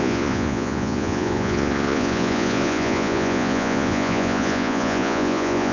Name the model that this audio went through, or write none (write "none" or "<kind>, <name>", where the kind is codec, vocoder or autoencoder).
vocoder, Vocos